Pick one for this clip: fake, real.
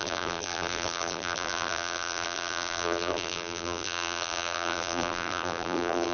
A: fake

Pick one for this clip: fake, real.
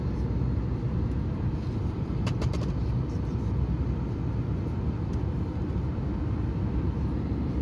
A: real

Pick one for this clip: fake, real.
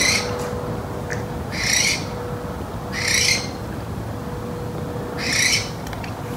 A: real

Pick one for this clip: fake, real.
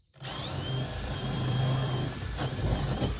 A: fake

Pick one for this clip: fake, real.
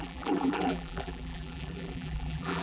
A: fake